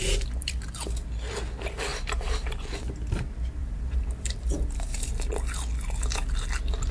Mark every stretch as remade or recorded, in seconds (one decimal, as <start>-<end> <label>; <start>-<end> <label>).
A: 0.0-1.9 recorded; 1.9-2.9 remade; 2.9-3.6 recorded; 3.6-5.1 remade; 5.1-6.9 recorded